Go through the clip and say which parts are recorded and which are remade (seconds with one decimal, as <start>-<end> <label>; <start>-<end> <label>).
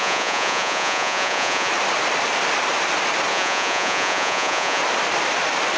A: 0.0-1.7 remade; 1.7-3.3 recorded; 3.3-4.8 remade; 4.8-5.8 recorded